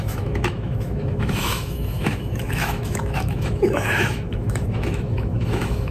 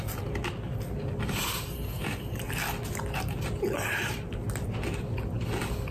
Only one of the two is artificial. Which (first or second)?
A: first